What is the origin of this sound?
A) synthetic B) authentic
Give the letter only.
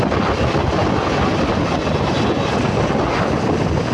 B